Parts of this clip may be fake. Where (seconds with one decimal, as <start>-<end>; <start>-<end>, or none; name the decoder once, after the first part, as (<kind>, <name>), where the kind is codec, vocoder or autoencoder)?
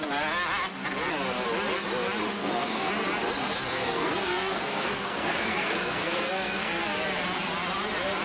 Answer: 2.4-2.9 (codec, SNAC); 3.8-6.8